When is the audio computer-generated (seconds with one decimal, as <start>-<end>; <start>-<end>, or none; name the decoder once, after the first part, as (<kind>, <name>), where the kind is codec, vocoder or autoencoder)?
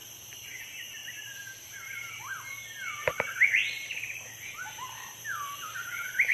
none